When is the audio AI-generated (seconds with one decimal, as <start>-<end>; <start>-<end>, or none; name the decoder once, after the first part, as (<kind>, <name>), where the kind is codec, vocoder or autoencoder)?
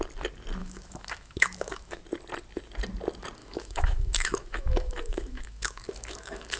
0.6-2.0 (autoencoder, DAC-VAE); 3.4-6.6